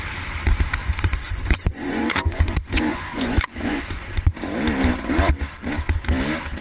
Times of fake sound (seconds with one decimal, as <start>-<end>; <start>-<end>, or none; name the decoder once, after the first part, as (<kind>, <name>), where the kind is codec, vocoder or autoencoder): 0.8-4.3 (vocoder, Vocos)